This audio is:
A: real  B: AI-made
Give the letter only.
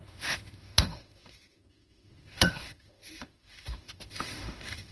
B